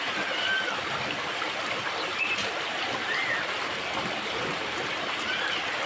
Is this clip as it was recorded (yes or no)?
yes